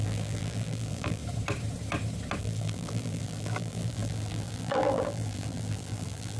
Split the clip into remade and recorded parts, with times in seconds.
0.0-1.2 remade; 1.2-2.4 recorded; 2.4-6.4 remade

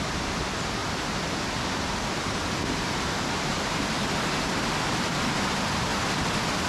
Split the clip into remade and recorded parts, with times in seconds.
0.0-6.7 recorded

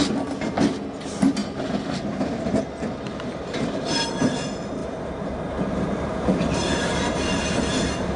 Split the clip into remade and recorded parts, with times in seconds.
0.0-3.1 recorded; 3.1-4.2 remade; 4.2-4.8 recorded; 4.8-7.5 remade; 7.5-8.2 recorded

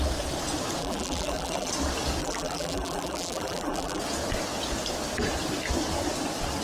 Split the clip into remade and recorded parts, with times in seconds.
0.0-0.8 recorded; 0.8-1.7 remade; 1.7-2.2 recorded; 2.2-4.0 remade; 4.0-6.6 recorded

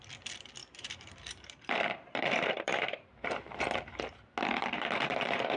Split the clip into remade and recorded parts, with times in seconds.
0.0-0.6 recorded; 0.6-3.6 remade; 3.6-4.6 recorded; 4.6-5.6 remade

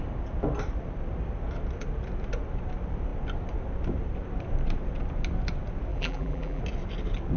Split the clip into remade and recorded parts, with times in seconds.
0.0-5.9 recorded; 5.9-6.6 remade; 6.6-7.4 recorded